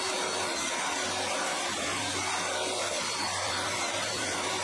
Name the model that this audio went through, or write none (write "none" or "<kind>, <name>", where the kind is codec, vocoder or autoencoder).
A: vocoder, BigVGAN v2